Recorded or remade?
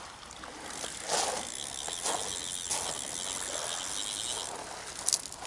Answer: recorded